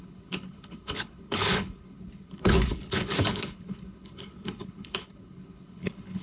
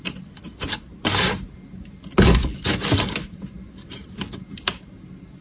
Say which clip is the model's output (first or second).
first